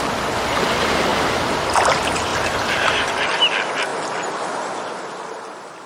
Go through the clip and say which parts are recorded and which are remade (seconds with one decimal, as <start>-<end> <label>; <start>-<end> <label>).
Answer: 0.0-2.3 recorded; 2.3-3.1 remade; 3.1-5.9 recorded